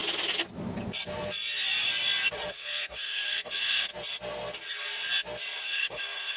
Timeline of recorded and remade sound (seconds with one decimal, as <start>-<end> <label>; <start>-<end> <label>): 0.0-2.5 recorded; 2.5-3.9 remade; 3.9-5.6 recorded; 5.6-6.4 remade